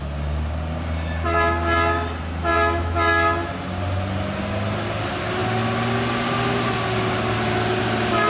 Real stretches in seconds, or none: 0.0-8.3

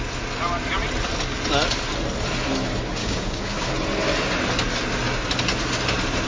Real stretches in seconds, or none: 0.0-3.0; 3.7-6.3

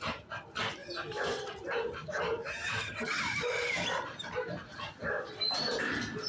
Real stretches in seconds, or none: 0.0-0.8; 4.6-6.3

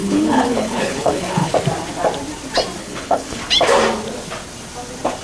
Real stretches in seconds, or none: 1.5-2.8; 3.4-5.2

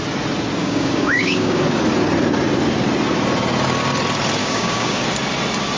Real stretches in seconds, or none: 0.0-0.6; 1.6-4.4; 5.0-5.8

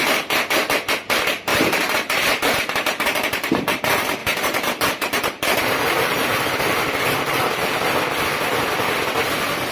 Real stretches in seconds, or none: 0.0-1.5; 3.8-4.2; 6.3-9.7

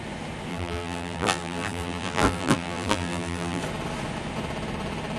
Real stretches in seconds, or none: 0.0-0.5; 3.6-5.2

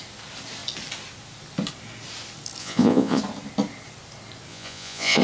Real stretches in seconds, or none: 0.0-2.6; 3.2-4.5